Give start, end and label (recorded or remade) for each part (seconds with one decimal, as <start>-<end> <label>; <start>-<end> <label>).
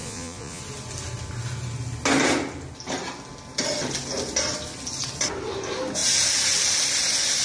0.0-0.6 remade; 0.6-7.4 recorded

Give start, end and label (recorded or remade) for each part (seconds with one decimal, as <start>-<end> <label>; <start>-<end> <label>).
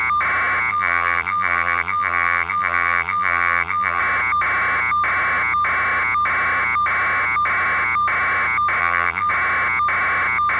0.0-0.7 recorded; 0.7-4.0 remade; 4.0-8.8 recorded; 8.8-9.3 remade; 9.3-10.6 recorded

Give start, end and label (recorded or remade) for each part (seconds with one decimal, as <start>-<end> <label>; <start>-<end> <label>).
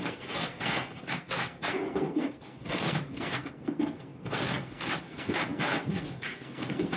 0.0-7.0 remade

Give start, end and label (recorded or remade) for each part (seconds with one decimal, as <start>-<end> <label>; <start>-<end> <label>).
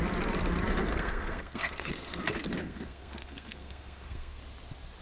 0.0-0.9 recorded; 0.9-2.2 remade; 2.2-2.6 recorded; 2.6-4.4 remade; 4.4-5.0 recorded